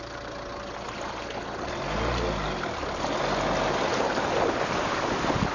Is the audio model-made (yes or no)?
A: no